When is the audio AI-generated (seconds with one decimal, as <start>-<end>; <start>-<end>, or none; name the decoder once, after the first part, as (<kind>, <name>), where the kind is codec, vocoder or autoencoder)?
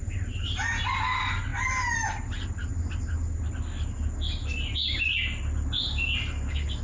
none